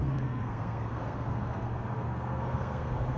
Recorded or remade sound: remade